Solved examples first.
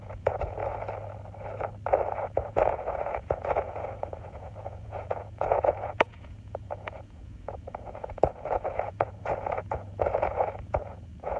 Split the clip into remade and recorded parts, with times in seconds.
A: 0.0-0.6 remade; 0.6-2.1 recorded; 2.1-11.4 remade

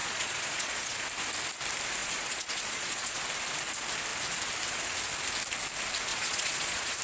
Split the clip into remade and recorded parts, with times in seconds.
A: 0.0-1.0 remade; 1.0-2.0 recorded; 2.0-3.2 remade; 3.2-6.1 recorded; 6.1-7.0 remade